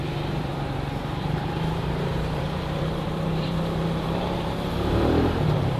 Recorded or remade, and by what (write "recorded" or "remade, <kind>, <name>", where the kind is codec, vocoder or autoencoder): remade, vocoder, BigVGAN v2